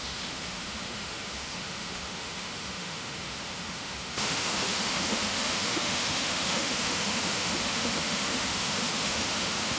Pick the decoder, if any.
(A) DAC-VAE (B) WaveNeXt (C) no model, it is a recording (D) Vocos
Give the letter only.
A